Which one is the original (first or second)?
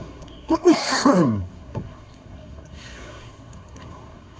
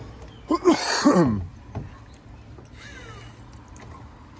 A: second